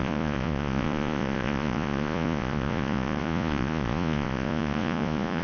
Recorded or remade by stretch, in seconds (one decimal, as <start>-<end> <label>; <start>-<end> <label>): 0.0-5.4 remade